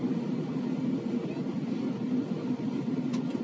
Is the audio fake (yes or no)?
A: no